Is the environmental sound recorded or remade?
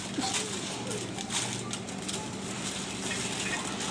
recorded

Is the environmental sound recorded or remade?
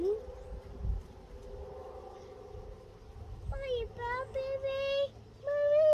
recorded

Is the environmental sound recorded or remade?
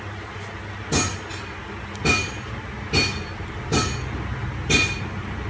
recorded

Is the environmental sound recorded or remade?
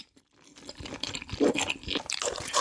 recorded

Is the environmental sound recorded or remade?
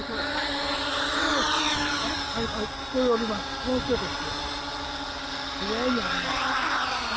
recorded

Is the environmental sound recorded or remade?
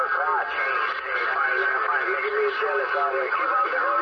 recorded